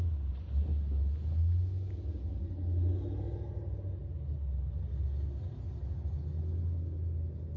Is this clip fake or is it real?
real